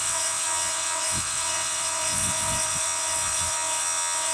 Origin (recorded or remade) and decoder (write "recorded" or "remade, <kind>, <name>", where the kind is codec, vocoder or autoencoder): remade, vocoder, WaveNeXt